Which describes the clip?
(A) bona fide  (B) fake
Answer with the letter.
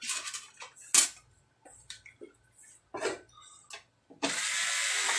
A